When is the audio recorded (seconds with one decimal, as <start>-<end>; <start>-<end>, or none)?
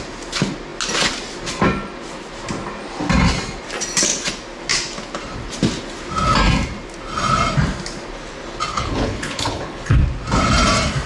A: 0.0-8.7; 10.0-11.1